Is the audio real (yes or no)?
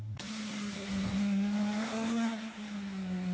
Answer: no